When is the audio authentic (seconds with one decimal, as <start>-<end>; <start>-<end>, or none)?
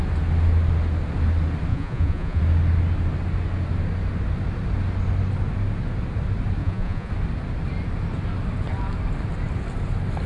0.0-1.7; 2.4-6.6; 7.1-10.3